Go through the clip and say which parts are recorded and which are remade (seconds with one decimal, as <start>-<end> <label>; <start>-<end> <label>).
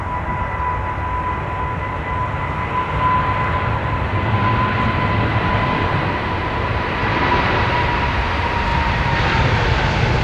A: 0.0-8.7 recorded; 8.7-9.2 remade; 9.2-10.2 recorded